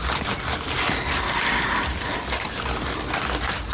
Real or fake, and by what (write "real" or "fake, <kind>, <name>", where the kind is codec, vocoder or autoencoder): real